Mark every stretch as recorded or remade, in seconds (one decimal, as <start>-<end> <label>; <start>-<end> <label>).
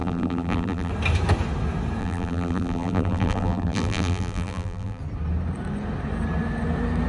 0.0-0.9 remade; 0.9-2.0 recorded; 2.0-5.0 remade; 5.0-7.1 recorded